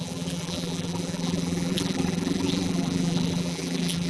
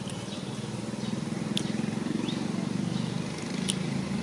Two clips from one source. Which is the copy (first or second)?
first